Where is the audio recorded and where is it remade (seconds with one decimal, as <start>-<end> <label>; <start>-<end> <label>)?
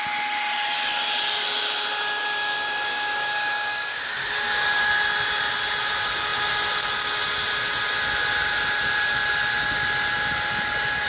0.0-2.5 recorded; 2.5-4.9 remade; 4.9-11.1 recorded